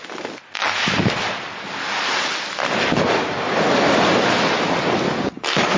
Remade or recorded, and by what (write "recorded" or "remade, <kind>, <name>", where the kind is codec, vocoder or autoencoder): recorded